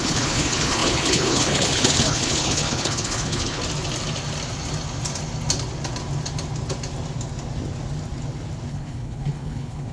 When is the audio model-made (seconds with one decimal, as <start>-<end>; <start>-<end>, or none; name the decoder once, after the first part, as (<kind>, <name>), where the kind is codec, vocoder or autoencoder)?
0.0-3.6 (codec, HILCodec); 8.7-9.9